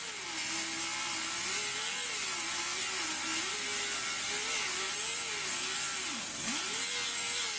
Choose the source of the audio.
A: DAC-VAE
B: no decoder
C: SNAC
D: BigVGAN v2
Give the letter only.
B